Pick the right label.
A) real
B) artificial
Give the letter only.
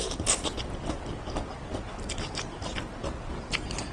A